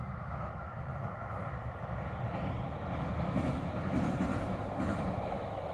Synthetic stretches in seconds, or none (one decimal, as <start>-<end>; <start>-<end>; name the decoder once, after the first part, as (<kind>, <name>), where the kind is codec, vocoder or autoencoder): 0.0-0.9 (autoencoder, DAC-VAE); 2.6-4.3; 5.2-5.7